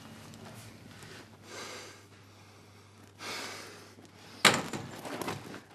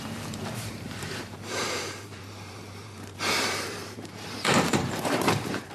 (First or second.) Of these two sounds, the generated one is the second